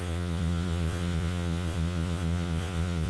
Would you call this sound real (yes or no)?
no